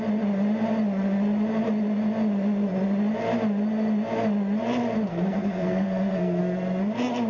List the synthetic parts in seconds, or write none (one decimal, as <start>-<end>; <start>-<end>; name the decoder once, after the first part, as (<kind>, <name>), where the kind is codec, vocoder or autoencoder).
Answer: 5.1-6.4 (codec, SNAC)